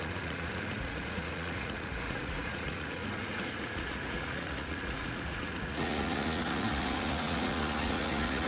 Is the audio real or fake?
fake